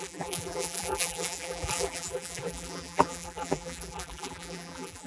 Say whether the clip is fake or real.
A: fake